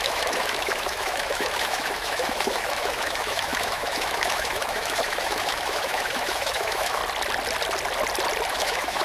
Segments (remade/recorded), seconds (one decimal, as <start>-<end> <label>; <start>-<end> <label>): 0.0-7.0 remade; 7.0-8.5 recorded; 8.5-9.0 remade